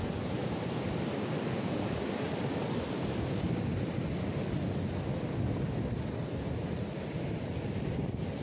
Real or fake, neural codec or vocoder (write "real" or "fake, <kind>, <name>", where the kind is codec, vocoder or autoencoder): real